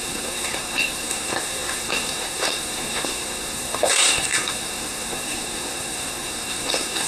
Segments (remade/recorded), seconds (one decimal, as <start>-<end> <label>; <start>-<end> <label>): 0.0-7.1 remade